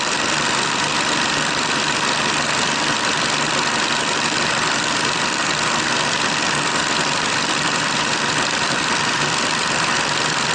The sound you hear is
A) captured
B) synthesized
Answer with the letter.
B